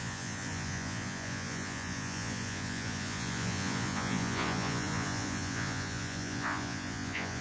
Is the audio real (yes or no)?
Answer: no